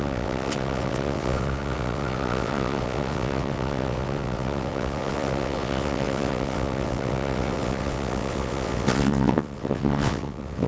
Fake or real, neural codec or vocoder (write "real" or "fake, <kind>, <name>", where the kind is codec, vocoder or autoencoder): fake, vocoder, WaveNeXt